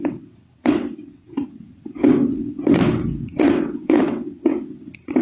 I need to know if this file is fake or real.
fake